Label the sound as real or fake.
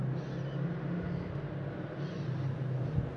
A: real